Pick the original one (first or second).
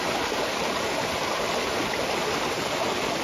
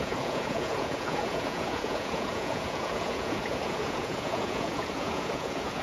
first